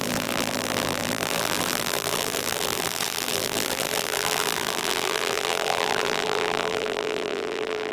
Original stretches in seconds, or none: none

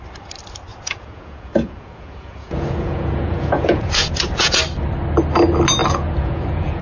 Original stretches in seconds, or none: 0.0-0.7; 4.6-5.8